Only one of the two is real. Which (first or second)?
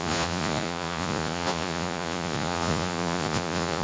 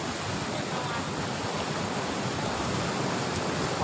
second